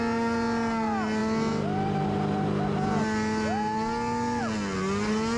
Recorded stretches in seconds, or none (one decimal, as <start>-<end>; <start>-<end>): 0.0-5.4

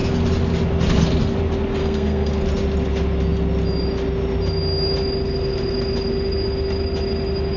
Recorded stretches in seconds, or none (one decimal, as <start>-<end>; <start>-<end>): 0.0-1.8; 2.3-7.6

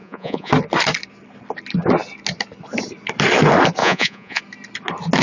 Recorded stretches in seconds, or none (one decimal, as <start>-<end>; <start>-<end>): 0.5-3.8; 4.4-5.2

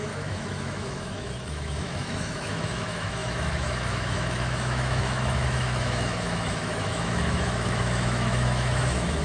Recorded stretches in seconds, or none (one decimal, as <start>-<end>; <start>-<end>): none

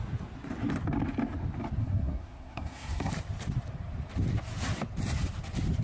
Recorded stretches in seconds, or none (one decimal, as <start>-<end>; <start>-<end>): 0.0-1.8; 3.1-5.8